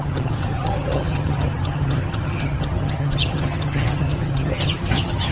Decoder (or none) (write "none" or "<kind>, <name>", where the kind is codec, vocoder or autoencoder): vocoder, HiFi-GAN